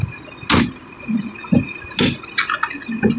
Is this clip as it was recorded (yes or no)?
yes